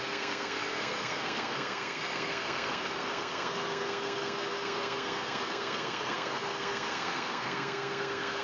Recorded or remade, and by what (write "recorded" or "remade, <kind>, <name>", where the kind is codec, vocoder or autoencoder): remade, codec, SNAC